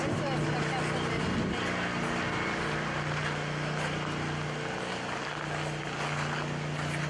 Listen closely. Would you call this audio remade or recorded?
recorded